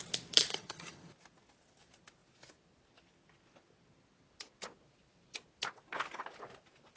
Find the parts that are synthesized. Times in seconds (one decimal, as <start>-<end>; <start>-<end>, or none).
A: 0.5-1.1